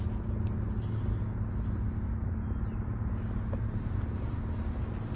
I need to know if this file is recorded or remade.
recorded